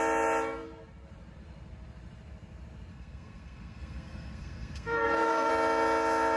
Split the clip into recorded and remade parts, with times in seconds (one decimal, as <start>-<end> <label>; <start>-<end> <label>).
0.0-2.9 recorded; 2.9-5.5 remade; 5.5-6.4 recorded